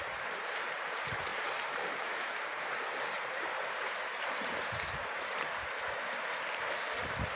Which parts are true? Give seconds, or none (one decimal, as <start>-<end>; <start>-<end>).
0.0-1.3; 5.7-7.4